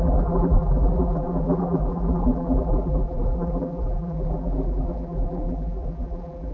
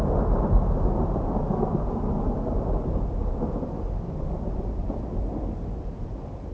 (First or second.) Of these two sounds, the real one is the second